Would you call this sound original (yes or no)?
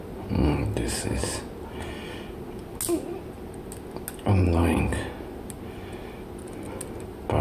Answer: yes